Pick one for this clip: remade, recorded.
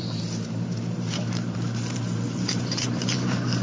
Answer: remade